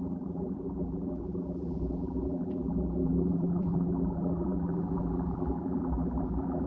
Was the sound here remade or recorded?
remade